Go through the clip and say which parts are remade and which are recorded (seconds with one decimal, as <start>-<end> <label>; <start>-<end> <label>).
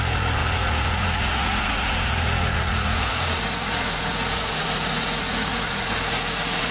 0.0-6.7 remade